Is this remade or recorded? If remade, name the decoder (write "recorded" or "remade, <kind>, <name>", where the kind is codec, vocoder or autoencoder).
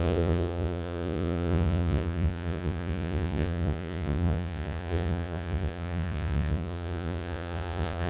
remade, vocoder, Vocos